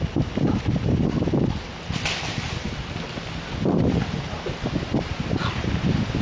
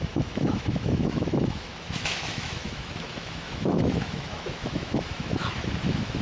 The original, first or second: first